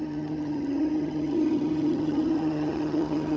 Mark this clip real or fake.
fake